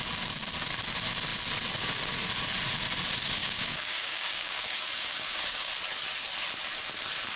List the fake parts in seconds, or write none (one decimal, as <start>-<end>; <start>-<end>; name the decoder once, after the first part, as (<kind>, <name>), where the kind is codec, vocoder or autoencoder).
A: 3.4-5.7 (codec, DAC)